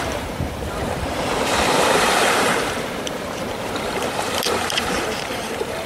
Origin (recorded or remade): remade